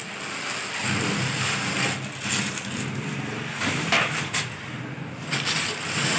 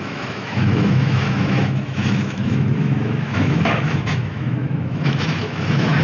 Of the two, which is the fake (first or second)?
second